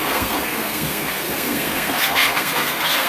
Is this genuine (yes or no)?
no